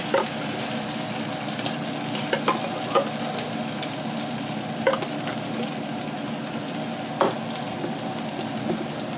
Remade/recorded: recorded